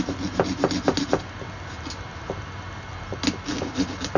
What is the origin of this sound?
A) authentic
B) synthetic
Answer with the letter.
A